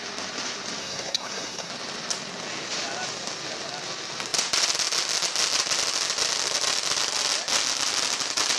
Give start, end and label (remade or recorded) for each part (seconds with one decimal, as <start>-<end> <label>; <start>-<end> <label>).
0.0-0.8 recorded; 0.8-1.7 remade; 1.7-8.6 recorded